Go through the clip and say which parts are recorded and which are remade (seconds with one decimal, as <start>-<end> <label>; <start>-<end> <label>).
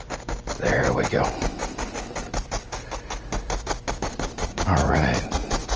0.0-4.4 recorded; 4.4-5.8 remade